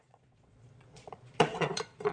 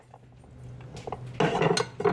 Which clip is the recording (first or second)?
second